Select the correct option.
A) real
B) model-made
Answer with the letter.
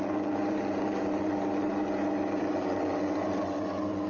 A